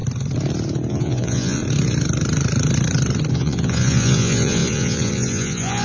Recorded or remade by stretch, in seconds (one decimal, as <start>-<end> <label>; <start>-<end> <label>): 0.0-0.9 recorded; 0.9-1.6 remade; 1.6-3.3 recorded; 3.3-5.8 remade